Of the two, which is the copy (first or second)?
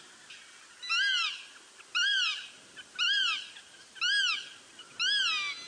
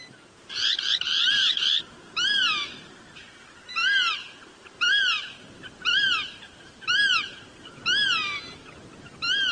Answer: second